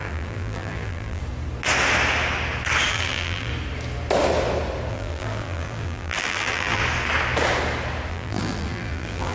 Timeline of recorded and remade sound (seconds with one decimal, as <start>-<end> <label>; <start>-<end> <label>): 0.0-1.2 remade; 1.2-2.9 recorded; 2.9-3.5 remade; 3.5-4.9 recorded; 4.9-6.8 remade; 6.8-8.1 recorded; 8.1-9.3 remade